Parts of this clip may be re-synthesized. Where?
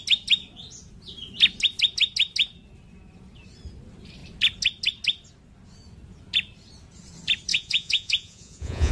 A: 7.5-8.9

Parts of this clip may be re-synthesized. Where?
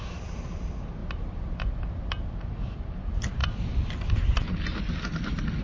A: none